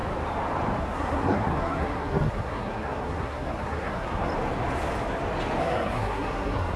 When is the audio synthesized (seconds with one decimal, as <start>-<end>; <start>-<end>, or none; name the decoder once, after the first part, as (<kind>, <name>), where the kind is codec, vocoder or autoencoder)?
0.8-4.3 (codec, SNAC); 5.6-6.8